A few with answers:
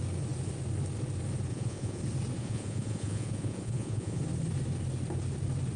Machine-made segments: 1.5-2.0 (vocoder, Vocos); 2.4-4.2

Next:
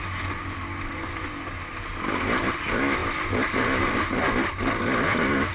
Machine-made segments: none